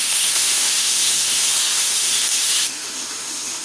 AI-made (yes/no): yes